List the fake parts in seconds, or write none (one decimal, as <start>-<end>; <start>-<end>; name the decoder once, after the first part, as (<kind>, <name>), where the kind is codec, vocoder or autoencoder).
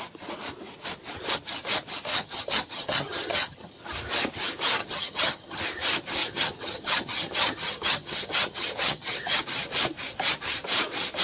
2.1-3.8 (vocoder, HiFi-GAN); 4.8-5.6; 6.2-9.4